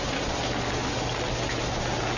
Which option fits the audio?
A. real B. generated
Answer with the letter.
A